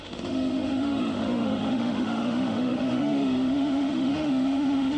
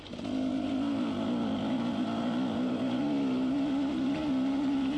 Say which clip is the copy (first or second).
first